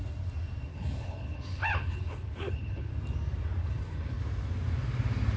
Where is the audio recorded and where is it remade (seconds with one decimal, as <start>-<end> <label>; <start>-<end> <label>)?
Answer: 0.0-0.7 recorded; 0.7-2.9 remade; 2.9-3.6 recorded; 3.6-4.2 remade; 4.2-5.4 recorded